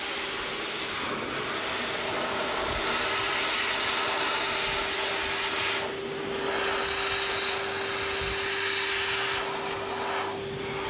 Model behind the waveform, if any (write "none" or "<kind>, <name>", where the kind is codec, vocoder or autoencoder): none